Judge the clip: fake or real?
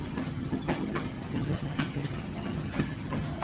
fake